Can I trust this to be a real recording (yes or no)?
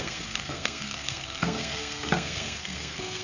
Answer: no